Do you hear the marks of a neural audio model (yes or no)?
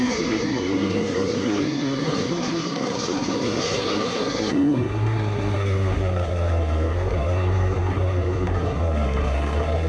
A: yes